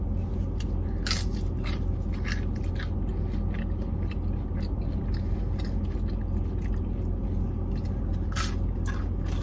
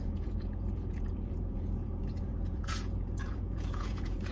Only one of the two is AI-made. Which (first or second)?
second